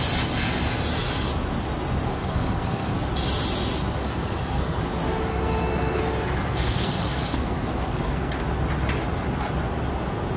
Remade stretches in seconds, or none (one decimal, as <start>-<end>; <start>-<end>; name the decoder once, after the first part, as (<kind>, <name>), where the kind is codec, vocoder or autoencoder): 2.1-2.9 (codec, SNAC); 4.0-4.8; 5.3-6.0; 6.5-8.4